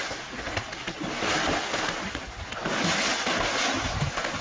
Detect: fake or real real